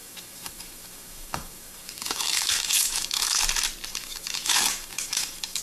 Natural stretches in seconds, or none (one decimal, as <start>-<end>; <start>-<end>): 3.4-3.9